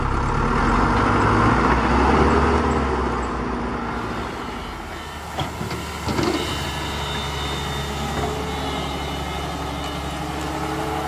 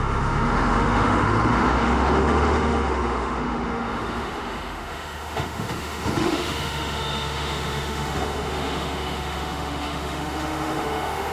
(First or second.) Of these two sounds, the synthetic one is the second